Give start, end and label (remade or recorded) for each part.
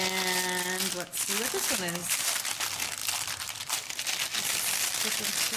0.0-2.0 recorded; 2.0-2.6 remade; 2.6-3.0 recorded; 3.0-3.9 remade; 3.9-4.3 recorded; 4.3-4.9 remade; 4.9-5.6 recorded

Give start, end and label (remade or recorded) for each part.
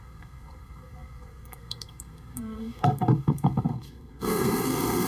0.0-5.1 remade